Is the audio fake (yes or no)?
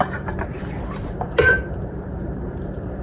yes